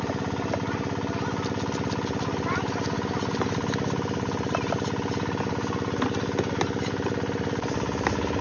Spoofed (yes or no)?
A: no